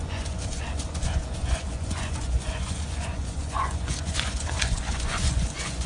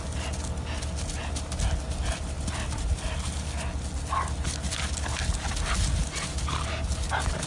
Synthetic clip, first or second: first